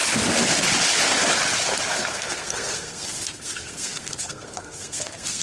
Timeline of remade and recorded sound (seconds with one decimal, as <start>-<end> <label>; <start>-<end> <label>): 0.0-1.9 recorded; 1.9-5.4 remade